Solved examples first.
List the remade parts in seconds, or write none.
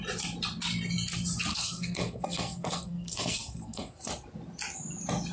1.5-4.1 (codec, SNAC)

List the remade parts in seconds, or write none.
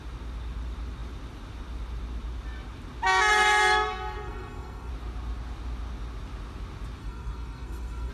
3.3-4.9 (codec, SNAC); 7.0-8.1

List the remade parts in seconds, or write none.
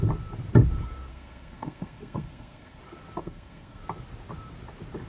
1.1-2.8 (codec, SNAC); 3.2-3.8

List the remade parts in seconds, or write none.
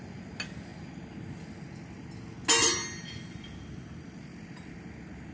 none